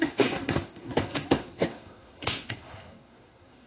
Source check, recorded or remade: remade